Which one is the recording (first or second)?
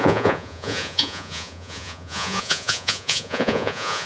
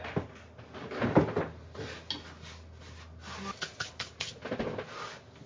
second